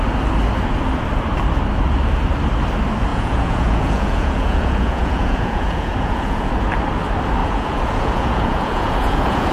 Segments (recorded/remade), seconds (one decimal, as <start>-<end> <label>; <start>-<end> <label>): 0.0-3.1 recorded; 3.1-6.5 remade; 6.5-7.4 recorded; 7.4-9.5 remade